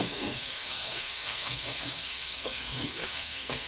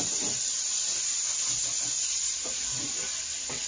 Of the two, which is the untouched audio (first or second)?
second